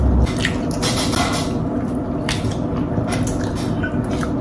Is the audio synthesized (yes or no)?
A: no